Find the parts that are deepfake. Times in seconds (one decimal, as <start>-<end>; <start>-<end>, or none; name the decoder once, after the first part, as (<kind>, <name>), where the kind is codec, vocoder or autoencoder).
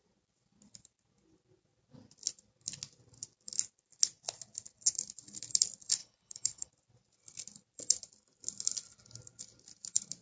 6.0-6.7 (codec, HILCodec)